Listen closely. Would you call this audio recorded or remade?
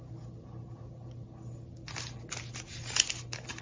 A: recorded